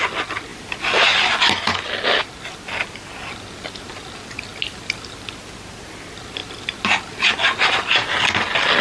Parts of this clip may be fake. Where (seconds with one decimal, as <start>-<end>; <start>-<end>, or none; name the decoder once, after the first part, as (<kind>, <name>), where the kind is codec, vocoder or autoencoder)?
none